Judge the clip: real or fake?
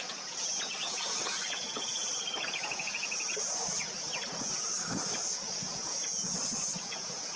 fake